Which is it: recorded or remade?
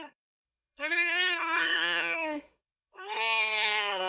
remade